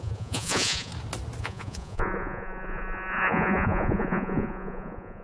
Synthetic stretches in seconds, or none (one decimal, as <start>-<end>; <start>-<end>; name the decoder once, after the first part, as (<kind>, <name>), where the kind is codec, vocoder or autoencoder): 0.0-0.9 (vocoder, Vocos); 1.4-5.2